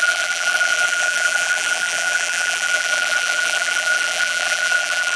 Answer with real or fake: fake